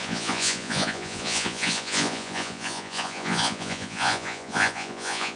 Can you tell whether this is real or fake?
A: fake